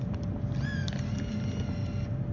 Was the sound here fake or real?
real